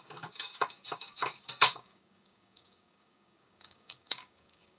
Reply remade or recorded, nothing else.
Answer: remade